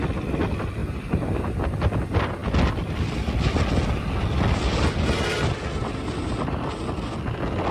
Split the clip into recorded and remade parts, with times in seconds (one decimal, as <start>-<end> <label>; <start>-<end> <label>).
0.0-0.8 recorded; 0.8-1.4 remade; 1.4-7.7 recorded